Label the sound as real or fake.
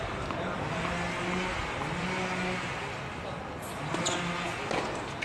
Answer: real